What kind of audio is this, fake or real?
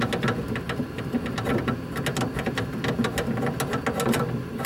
real